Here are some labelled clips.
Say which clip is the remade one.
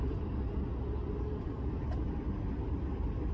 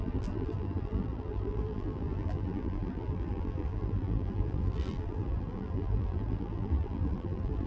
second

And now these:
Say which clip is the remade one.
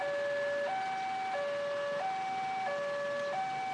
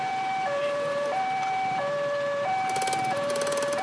second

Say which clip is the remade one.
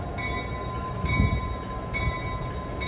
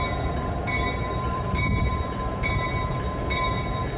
second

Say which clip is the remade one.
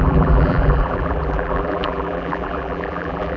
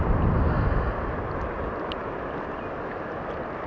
first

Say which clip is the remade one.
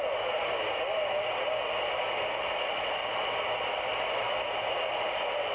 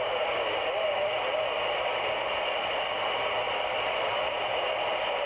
second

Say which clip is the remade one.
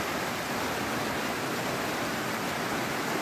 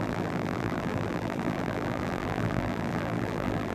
second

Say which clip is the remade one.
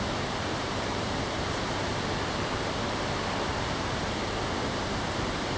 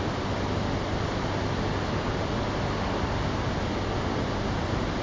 first